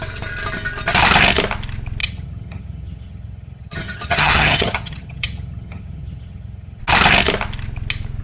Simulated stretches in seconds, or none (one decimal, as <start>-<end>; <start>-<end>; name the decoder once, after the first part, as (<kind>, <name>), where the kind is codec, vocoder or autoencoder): 2.0-6.8 (vocoder, HiFi-GAN)